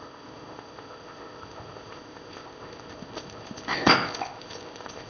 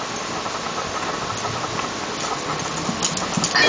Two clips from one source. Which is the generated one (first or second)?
first